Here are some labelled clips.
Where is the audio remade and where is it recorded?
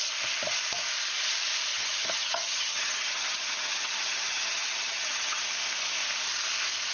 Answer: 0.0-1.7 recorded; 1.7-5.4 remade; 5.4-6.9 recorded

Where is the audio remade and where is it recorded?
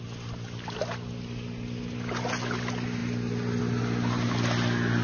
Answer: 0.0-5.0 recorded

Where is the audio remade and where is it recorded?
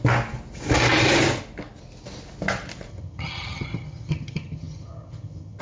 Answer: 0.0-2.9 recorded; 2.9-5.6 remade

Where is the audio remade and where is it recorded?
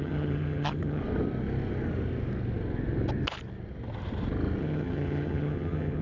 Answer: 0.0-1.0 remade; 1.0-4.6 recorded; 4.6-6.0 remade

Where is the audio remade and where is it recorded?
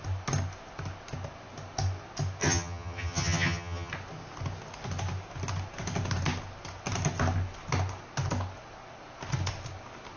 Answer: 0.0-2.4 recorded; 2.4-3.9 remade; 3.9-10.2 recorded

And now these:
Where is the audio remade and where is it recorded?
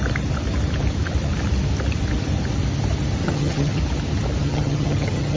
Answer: 0.0-3.2 recorded; 3.2-3.8 remade; 3.8-4.4 recorded; 4.4-5.4 remade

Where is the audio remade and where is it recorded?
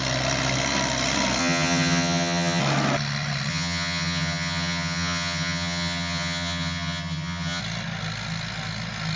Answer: 0.0-1.4 recorded; 1.4-2.6 remade; 2.6-3.5 recorded; 3.5-7.6 remade; 7.6-9.2 recorded